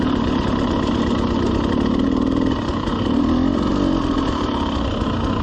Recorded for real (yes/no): no